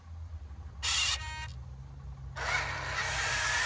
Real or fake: real